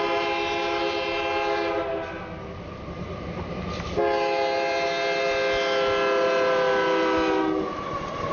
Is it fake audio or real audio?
real